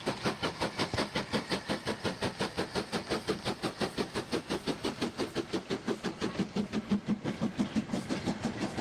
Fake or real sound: real